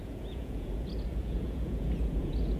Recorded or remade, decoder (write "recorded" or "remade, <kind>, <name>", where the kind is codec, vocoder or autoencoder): remade, vocoder, Vocos